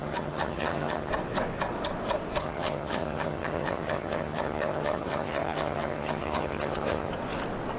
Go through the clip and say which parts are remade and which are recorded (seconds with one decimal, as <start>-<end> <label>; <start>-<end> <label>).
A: 0.0-1.1 remade; 1.1-2.4 recorded; 2.4-7.1 remade; 7.1-7.8 recorded